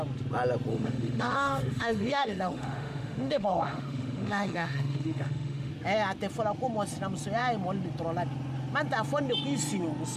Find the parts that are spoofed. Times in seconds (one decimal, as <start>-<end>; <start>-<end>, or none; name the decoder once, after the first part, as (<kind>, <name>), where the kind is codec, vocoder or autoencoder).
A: 0.7-5.7 (autoencoder, DAC-VAE)